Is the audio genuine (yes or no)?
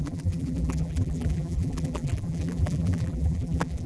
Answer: no